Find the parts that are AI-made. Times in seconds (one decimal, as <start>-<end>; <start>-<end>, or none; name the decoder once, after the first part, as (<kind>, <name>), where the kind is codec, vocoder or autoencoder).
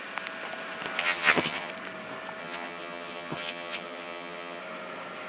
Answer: 1.0-1.7 (vocoder, HiFi-GAN); 2.4-4.6